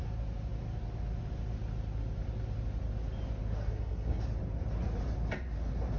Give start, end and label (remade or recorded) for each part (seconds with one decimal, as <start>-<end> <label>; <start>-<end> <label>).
0.0-3.6 recorded; 3.6-4.2 remade; 4.2-6.0 recorded